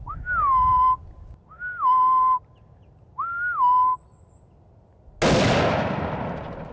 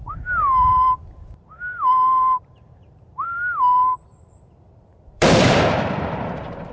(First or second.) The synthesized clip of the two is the second